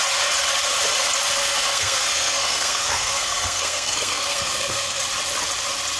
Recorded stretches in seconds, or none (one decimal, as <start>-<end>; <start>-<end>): 0.0-1.4; 5.0-6.0